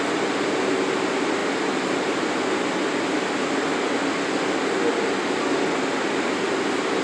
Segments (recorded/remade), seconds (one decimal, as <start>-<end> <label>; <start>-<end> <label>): 0.0-7.0 recorded